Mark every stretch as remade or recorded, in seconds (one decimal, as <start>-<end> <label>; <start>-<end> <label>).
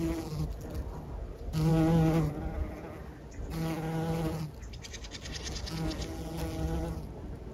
0.0-7.5 recorded